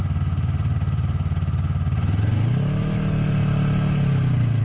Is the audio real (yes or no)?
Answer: yes